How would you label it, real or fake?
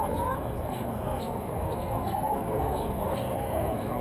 fake